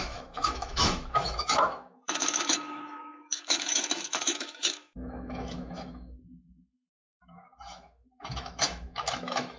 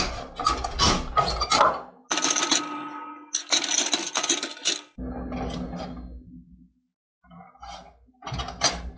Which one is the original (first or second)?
second